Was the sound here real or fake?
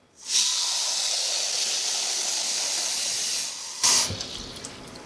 real